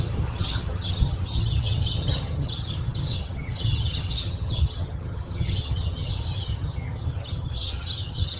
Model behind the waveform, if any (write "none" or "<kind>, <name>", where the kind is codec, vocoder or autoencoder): vocoder, HiFi-GAN